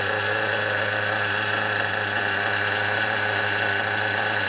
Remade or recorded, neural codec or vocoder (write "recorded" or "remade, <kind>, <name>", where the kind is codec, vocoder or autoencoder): recorded